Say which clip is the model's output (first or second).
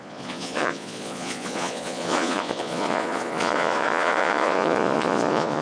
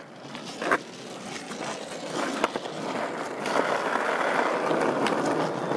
first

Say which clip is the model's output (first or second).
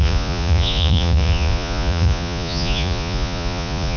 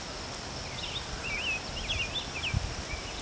first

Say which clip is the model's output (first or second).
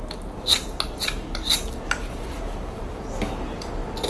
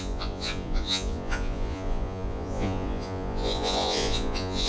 second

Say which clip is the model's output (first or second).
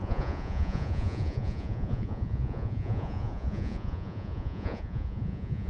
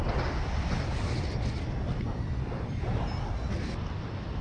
first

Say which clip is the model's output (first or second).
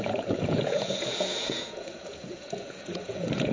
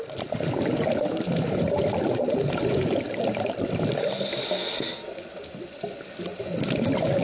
first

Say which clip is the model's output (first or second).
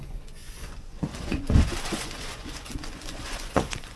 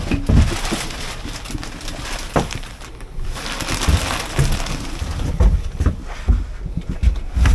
first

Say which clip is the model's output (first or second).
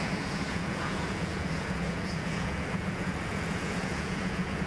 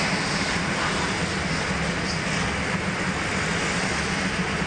first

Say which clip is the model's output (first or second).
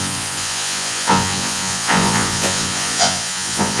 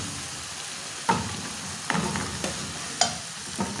first